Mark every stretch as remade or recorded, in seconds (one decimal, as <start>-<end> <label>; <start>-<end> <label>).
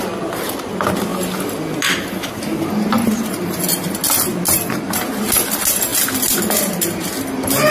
0.0-7.7 recorded